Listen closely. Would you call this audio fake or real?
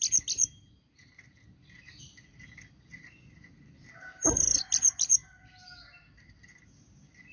real